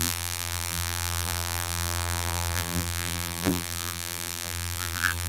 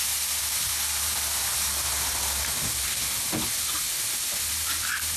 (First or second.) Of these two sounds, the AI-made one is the first